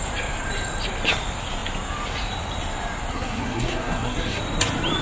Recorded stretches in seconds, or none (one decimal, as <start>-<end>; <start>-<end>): 0.0-3.1; 4.4-5.0